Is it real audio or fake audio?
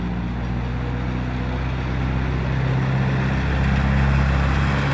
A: real